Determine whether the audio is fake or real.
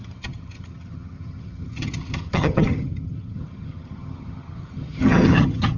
fake